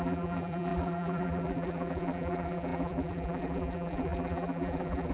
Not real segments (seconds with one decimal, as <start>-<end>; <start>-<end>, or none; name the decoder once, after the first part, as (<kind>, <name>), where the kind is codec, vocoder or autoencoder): 0.0-5.1 (vocoder, BigVGAN v2)